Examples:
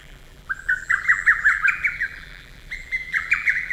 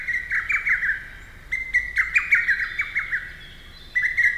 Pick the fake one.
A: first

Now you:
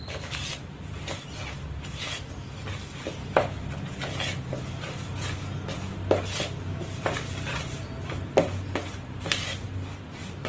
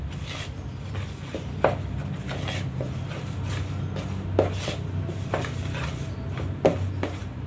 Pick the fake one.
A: second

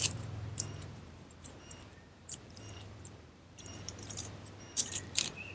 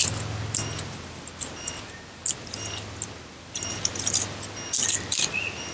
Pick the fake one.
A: first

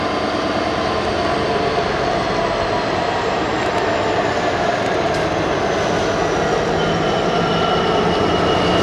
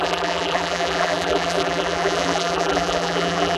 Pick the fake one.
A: second